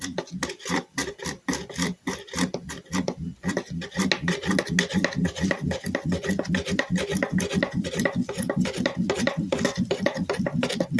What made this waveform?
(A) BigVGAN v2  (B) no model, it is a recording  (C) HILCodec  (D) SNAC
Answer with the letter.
B